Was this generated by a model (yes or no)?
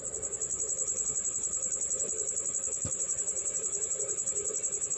no